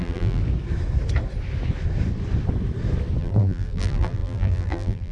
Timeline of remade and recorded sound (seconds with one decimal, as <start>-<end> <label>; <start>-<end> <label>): 0.0-0.4 remade; 0.4-3.2 recorded; 3.2-5.1 remade